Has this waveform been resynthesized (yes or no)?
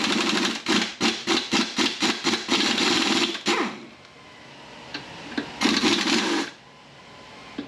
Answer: no